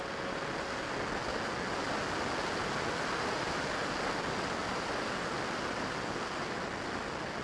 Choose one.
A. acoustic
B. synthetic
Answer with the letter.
A